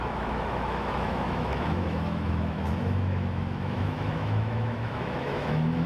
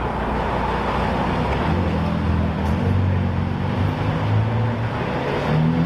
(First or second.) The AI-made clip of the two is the first